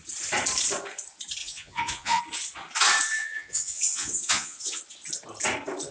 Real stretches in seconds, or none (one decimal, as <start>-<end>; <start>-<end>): 0.0-1.4; 2.2-3.2; 4.8-5.9